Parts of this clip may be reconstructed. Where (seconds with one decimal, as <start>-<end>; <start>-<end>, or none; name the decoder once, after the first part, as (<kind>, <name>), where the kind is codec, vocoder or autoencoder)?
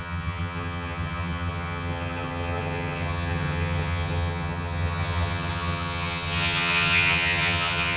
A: 0.0-8.0 (vocoder, HiFi-GAN)